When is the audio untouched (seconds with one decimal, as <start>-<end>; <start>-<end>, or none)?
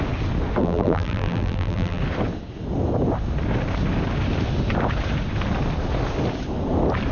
0.0-0.6; 2.0-7.1